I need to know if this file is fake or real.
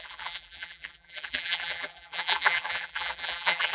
fake